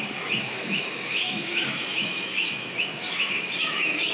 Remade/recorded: remade